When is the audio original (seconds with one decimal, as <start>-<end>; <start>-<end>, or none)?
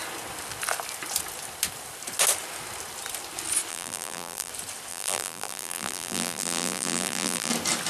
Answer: 0.0-3.7; 4.5-4.9; 7.5-7.9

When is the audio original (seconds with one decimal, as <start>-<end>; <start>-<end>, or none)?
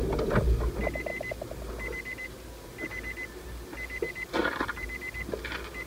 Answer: 0.0-4.4; 4.9-5.9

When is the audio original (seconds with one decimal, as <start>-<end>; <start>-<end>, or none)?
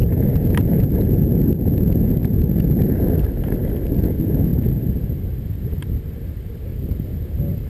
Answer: 0.0-7.7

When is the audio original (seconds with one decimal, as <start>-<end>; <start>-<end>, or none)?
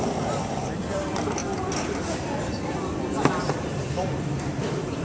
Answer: none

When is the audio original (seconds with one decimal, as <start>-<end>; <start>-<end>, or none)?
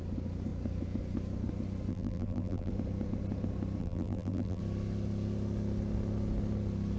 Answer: 0.0-1.9; 2.7-3.8; 4.6-7.0